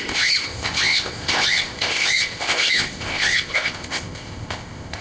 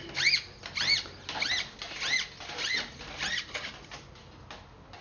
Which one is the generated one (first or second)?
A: first